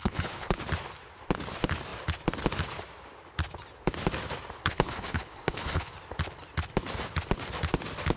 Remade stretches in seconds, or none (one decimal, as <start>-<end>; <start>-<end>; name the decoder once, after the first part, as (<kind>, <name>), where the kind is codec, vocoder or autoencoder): 0.0-0.6 (codec, HILCodec); 4.6-5.9